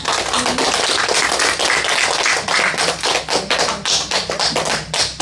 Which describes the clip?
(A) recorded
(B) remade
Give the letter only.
A